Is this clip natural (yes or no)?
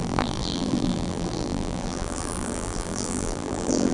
no